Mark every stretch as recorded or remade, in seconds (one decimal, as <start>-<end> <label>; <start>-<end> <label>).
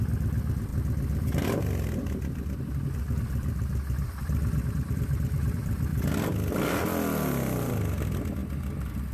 0.0-5.9 remade; 5.9-6.5 recorded; 6.5-8.4 remade; 8.4-9.1 recorded